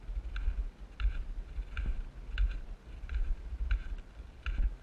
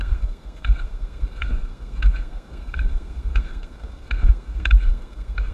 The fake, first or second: second